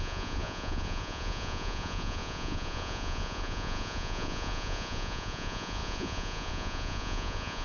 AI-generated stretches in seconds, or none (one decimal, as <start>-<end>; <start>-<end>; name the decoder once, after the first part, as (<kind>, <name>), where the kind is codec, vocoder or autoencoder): 0.0-7.6 (vocoder, Vocos)